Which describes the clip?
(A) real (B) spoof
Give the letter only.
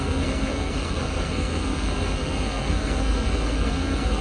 B